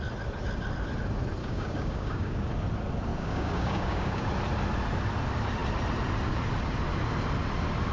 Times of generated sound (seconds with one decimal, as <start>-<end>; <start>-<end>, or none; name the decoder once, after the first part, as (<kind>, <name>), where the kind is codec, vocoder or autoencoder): 1.4-2.5 (codec, DAC); 3.1-4.2